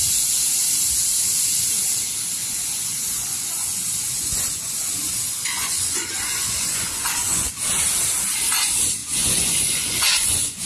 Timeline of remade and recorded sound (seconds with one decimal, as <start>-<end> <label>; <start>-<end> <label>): 0.0-2.4 recorded; 2.4-7.5 remade; 7.5-9.0 recorded; 9.0-10.7 remade